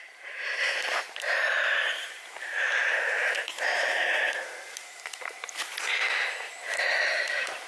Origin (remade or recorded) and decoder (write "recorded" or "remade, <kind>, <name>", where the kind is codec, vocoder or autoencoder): remade, vocoder, BigVGAN v2